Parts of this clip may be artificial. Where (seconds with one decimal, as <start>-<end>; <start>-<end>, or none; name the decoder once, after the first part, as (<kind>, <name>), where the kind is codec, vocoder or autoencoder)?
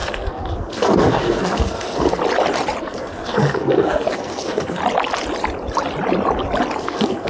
0.0-2.2 (codec, SNAC); 2.8-4.8; 6.8-7.3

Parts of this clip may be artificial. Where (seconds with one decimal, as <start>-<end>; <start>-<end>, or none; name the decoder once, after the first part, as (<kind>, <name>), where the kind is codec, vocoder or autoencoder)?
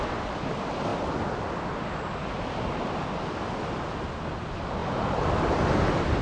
none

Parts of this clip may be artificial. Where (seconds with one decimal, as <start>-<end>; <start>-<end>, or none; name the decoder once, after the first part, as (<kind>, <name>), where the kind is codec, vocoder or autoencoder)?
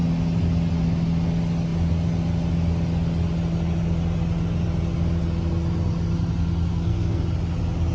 6.7-7.2 (codec, SNAC)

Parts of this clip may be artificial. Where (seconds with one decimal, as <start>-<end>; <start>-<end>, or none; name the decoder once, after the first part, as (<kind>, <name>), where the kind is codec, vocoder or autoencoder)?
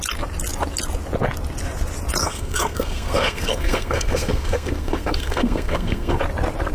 2.2-6.2 (codec, SNAC)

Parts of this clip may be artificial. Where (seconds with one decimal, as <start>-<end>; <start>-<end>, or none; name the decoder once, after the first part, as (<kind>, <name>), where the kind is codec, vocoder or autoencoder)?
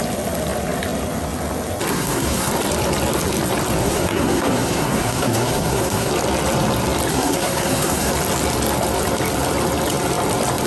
1.9-2.5 (codec, SNAC); 3.8-6.1; 7.1-8.1